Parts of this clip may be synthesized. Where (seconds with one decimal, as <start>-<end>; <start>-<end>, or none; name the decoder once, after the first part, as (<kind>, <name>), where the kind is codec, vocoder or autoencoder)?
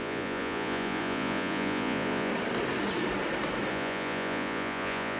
0.0-2.3 (vocoder, Vocos); 3.7-5.2